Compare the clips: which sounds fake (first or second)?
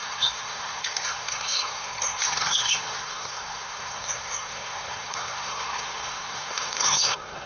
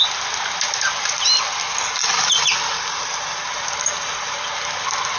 first